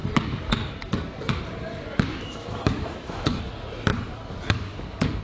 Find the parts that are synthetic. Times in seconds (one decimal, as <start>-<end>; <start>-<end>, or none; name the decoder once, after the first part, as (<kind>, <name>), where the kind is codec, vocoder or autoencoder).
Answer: 2.1-3.4 (autoencoder, DAC-VAE)